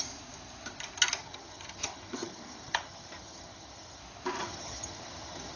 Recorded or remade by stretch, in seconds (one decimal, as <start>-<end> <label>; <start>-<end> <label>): 0.0-1.2 recorded; 1.2-4.0 remade; 4.0-4.4 recorded; 4.4-5.6 remade